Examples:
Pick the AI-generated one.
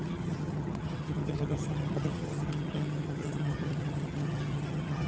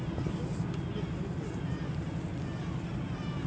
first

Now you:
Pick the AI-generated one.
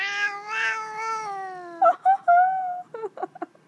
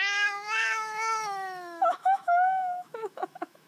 second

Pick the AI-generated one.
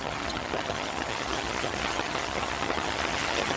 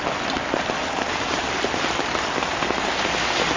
first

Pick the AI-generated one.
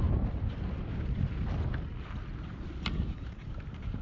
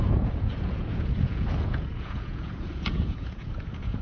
second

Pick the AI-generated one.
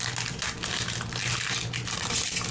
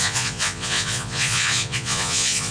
second